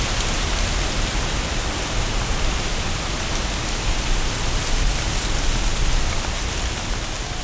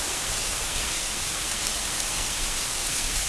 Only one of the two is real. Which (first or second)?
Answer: first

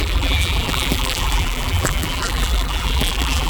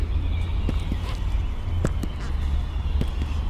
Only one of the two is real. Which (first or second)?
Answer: second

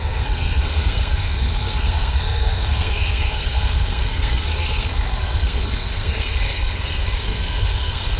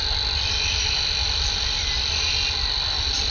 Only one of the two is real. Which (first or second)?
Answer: second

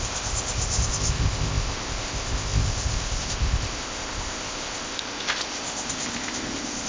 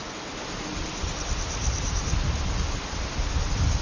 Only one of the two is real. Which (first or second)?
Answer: second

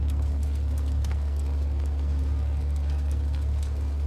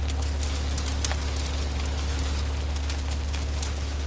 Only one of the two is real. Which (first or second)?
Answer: second